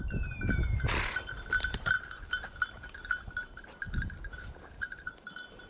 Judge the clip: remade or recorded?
remade